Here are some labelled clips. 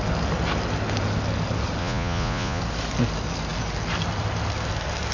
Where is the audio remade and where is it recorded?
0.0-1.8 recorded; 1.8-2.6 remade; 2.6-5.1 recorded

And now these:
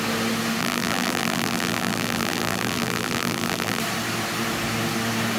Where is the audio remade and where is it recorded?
0.0-0.6 recorded; 0.6-3.8 remade; 3.8-5.4 recorded

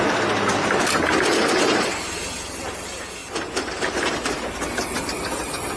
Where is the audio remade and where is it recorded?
0.0-5.8 recorded

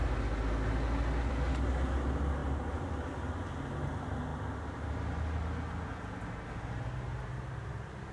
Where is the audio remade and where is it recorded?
0.0-8.1 recorded

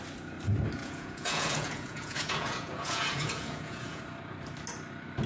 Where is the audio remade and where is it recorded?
0.0-0.8 recorded; 0.8-4.0 remade; 4.0-5.3 recorded

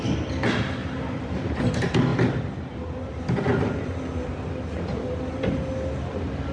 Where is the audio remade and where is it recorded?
0.0-0.8 recorded; 0.8-1.6 remade; 1.6-3.5 recorded; 3.5-5.1 remade; 5.1-6.5 recorded